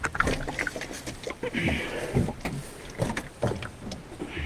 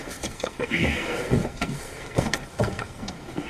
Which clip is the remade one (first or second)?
second